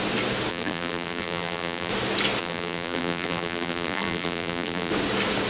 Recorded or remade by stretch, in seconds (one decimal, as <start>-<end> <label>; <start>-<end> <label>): 0.0-0.5 recorded; 0.5-1.9 remade; 1.9-2.4 recorded; 2.4-4.9 remade; 4.9-5.5 recorded